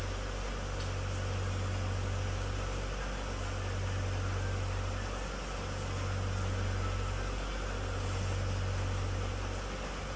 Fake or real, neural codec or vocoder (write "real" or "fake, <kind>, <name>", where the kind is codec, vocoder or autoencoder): real